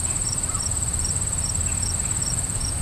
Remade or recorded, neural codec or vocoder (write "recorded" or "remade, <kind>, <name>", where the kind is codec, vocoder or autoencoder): remade, vocoder, Vocos